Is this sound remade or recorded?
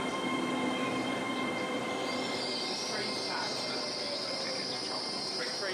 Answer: recorded